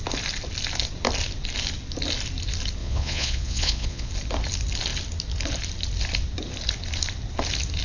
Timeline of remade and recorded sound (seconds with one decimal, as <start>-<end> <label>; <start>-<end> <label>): 0.0-2.8 recorded; 2.8-4.1 remade; 4.1-7.8 recorded